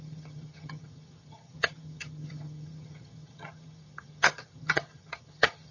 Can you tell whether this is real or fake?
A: fake